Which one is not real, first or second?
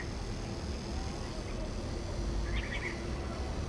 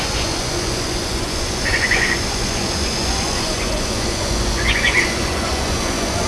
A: second